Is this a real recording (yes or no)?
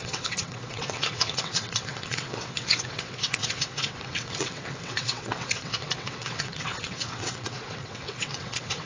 no